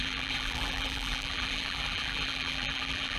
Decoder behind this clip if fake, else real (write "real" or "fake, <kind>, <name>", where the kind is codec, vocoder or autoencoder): fake, vocoder, BigVGAN v2